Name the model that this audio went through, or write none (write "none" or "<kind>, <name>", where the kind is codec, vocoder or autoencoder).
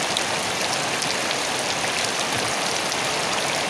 none